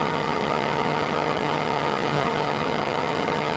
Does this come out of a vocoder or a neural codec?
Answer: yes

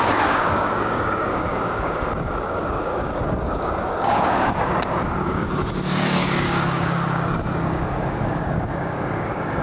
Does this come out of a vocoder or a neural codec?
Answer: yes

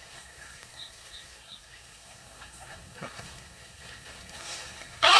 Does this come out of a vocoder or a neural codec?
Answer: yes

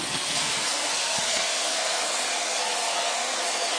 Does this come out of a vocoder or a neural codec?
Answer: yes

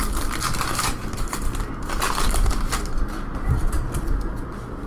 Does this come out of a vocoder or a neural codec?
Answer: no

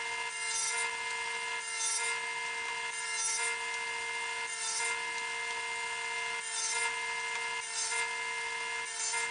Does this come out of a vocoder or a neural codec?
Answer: no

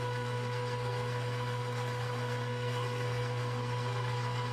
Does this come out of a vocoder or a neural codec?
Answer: yes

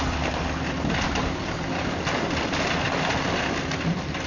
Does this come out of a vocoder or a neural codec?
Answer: yes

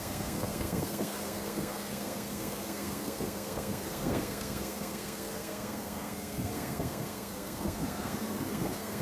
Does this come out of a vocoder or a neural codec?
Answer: yes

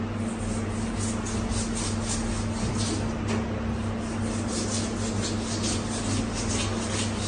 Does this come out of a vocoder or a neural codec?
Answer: no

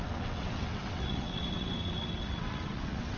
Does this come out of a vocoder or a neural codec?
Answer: yes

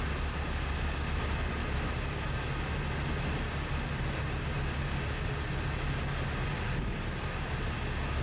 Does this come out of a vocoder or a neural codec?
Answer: no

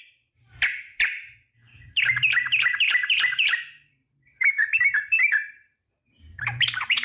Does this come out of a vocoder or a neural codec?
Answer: yes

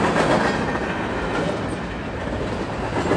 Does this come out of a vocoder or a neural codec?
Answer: no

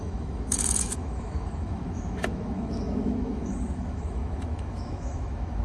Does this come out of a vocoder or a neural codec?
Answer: yes